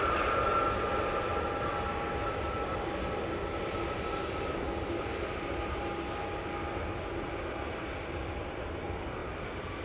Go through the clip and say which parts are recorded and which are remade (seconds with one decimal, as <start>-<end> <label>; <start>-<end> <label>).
0.0-9.8 recorded